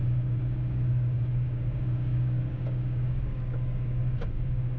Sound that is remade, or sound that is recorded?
remade